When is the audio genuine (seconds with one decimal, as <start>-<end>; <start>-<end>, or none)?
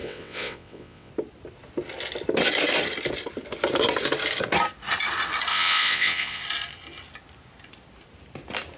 1.1-5.5; 6.4-8.8